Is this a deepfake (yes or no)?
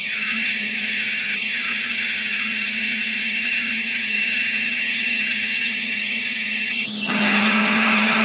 yes